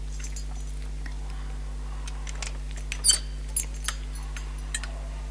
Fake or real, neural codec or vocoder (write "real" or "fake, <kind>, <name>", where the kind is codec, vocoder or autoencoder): real